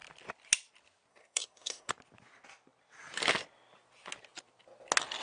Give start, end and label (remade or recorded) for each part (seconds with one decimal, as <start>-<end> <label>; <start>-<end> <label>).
0.0-1.1 recorded; 1.1-1.9 remade; 1.9-5.2 recorded